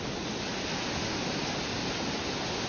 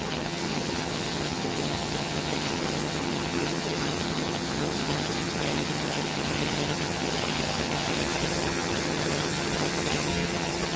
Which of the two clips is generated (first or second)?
second